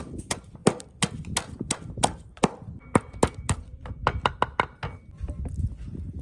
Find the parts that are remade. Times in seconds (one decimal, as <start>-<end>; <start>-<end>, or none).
0.6-4.3